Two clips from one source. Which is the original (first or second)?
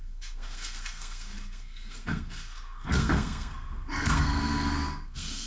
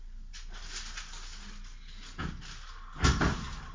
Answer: second